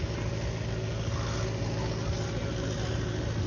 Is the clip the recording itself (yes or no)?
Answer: yes